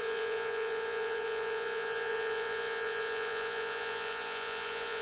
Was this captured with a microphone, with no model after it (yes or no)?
no